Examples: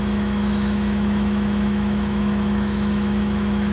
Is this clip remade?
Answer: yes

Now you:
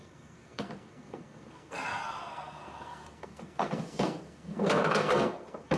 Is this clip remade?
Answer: yes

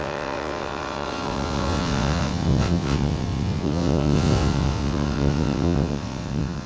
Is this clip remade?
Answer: yes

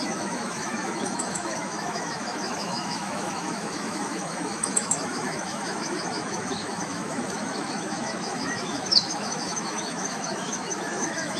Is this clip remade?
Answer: yes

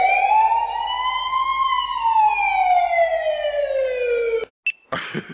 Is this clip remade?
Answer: no